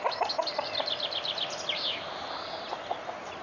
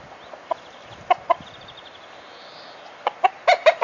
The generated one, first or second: first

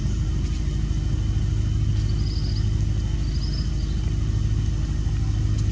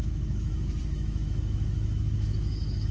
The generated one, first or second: second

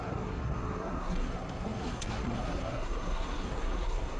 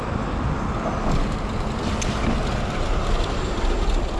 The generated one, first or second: first